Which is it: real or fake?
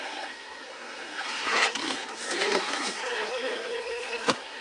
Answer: fake